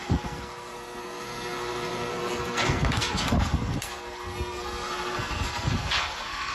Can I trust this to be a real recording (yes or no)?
no